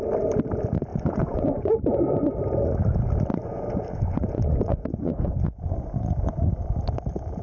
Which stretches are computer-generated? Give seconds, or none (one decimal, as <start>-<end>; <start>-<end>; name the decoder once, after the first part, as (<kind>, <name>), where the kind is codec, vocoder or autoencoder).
0.9-1.7 (vocoder, Vocos); 3.3-6.6